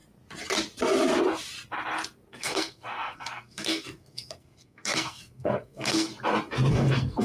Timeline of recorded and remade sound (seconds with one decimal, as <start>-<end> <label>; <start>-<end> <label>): 0.0-2.3 recorded; 2.3-6.1 remade; 6.1-6.7 recorded; 6.7-7.2 remade